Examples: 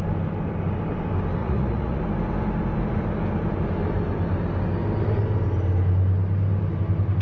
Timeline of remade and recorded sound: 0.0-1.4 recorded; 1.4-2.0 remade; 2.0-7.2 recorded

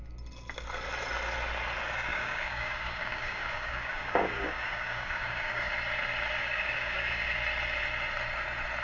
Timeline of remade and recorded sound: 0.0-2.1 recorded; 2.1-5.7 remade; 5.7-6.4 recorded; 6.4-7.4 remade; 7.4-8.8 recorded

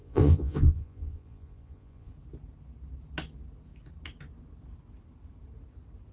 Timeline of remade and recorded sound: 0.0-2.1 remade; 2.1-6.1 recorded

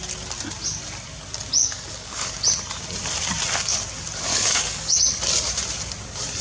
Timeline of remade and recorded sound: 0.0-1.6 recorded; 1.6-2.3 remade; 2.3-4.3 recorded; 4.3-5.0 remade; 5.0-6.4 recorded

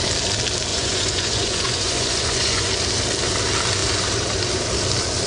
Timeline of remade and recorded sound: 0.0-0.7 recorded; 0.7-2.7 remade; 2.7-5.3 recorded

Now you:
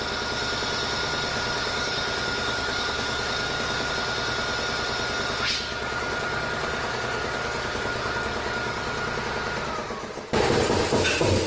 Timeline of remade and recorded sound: 0.0-1.3 recorded; 1.3-3.9 remade; 3.9-5.7 recorded; 5.7-9.2 remade; 9.2-11.5 recorded

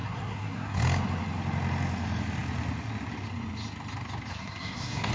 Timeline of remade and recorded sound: 0.0-0.8 remade; 0.8-4.3 recorded; 4.3-5.1 remade